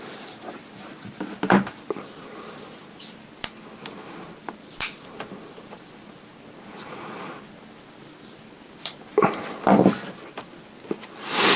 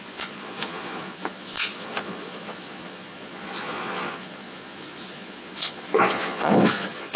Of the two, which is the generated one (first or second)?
second